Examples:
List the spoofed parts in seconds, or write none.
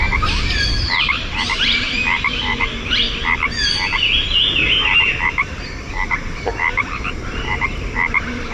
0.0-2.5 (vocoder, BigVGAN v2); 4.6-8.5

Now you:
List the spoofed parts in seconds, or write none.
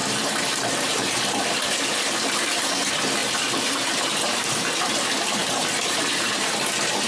0.0-7.1 (vocoder, BigVGAN v2)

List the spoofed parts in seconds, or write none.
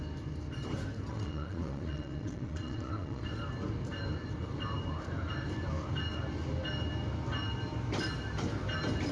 1.1-3.2 (vocoder, Vocos)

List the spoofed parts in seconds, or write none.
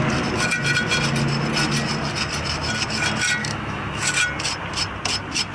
3.4-4.1 (autoencoder, DAC-VAE)